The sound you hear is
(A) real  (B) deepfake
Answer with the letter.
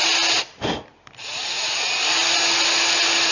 A